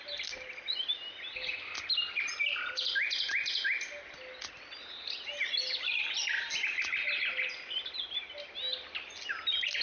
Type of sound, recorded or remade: recorded